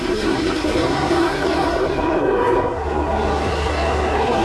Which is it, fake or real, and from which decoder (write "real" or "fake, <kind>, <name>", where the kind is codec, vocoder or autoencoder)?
fake, codec, SNAC